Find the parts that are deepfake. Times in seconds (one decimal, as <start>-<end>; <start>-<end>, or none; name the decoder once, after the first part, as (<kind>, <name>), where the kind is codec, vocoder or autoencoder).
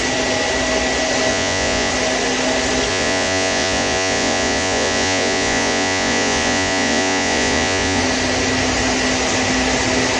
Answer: 1.3-1.9 (vocoder, Vocos); 2.9-8.0